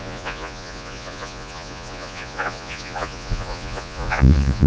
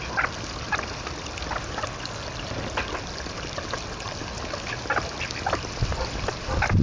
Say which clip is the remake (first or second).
first